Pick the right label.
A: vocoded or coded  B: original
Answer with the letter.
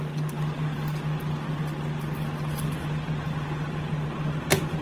B